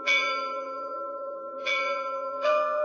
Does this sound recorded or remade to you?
remade